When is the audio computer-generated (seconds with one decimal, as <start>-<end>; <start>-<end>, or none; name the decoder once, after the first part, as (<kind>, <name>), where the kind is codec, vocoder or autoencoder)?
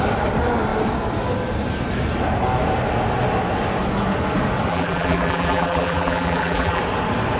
4.7-6.8 (vocoder, BigVGAN v2)